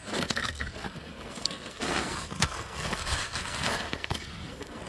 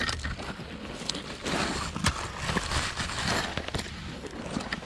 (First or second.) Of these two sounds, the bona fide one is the second